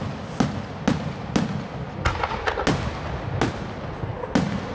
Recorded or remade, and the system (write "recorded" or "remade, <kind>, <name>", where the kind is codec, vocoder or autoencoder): recorded